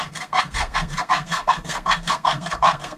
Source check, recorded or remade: remade